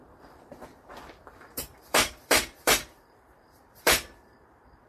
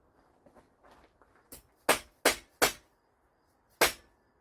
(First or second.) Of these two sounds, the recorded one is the second